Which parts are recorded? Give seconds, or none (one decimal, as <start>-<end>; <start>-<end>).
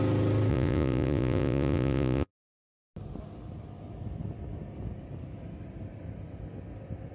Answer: 0.0-0.5; 2.3-7.1